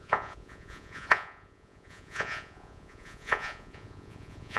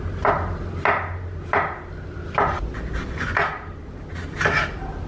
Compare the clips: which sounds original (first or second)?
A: second